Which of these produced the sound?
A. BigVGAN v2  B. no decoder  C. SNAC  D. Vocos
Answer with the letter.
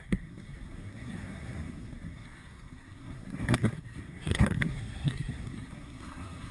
C